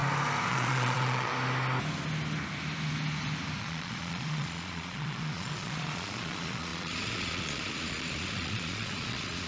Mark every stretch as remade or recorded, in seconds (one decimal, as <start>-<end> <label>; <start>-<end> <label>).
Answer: 0.0-0.5 recorded; 0.5-1.3 remade; 1.3-3.6 recorded; 3.6-9.5 remade